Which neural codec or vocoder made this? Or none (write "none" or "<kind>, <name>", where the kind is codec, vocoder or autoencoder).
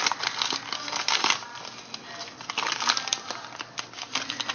none